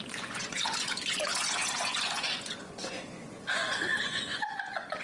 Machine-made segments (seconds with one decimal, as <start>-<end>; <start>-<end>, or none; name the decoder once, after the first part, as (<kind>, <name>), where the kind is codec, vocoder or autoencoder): 0.0-5.0 (vocoder, Vocos)